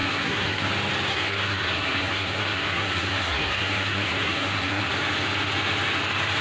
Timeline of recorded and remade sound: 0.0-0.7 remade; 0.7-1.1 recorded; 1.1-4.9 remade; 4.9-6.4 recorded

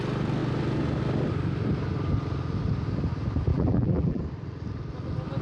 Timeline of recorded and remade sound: 0.0-3.5 recorded; 3.5-4.2 remade; 4.2-5.4 recorded

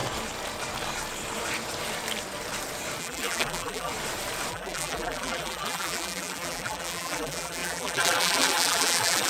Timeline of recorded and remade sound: 0.0-3.0 recorded; 3.0-3.9 remade; 3.9-4.5 recorded; 4.5-9.3 remade

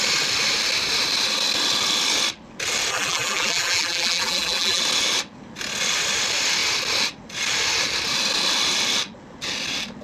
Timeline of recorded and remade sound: 0.0-2.9 recorded; 2.9-4.8 remade; 4.8-10.0 recorded

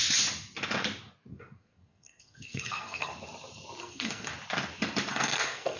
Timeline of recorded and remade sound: 0.0-1.3 recorded; 1.3-3.1 remade; 3.1-3.8 recorded; 3.8-4.3 remade; 4.3-5.1 recorded; 5.1-5.8 remade

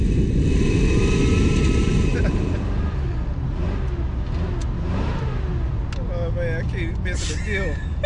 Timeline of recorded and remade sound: 0.0-2.1 recorded; 2.1-3.4 remade; 3.4-8.1 recorded

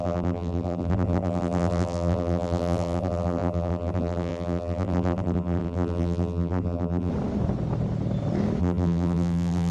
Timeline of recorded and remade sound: 0.0-7.1 remade; 7.1-8.6 recorded; 8.6-9.7 remade

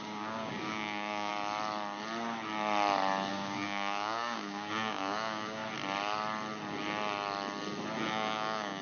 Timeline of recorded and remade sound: 0.0-1.3 remade; 1.3-3.3 recorded; 3.3-5.6 remade; 5.6-8.1 recorded; 8.1-8.8 remade